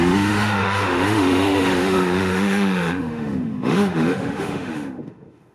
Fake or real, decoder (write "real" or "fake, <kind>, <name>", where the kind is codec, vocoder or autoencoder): fake, autoencoder, DAC-VAE